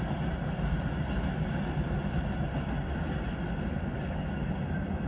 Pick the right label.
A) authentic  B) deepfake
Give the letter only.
A